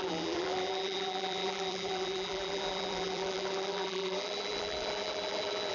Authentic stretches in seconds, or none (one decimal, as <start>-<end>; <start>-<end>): none